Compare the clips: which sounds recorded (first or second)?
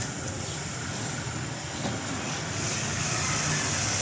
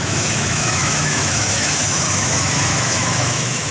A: first